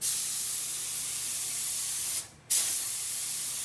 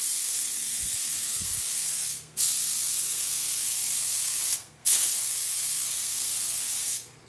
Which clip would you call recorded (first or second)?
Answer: first